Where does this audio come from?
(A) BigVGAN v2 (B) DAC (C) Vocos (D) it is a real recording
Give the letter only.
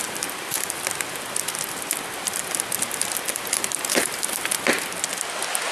D